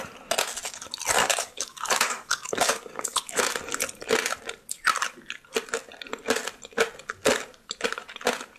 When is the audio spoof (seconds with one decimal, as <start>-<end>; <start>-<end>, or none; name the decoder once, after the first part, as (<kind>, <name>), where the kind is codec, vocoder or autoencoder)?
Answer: 1.2-3.5 (codec, DAC)